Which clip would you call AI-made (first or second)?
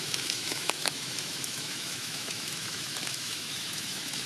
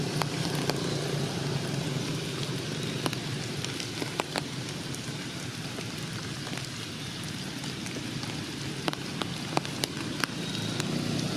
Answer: first